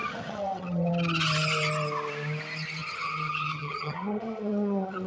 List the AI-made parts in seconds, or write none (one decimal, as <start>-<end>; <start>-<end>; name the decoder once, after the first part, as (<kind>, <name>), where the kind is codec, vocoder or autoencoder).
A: 0.0-0.9 (vocoder, HiFi-GAN); 2.8-5.1